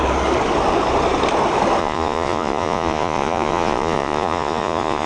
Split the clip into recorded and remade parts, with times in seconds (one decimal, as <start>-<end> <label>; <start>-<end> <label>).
0.0-1.8 recorded; 1.8-5.1 remade